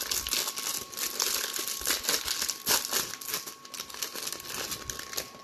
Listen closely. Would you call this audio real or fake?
real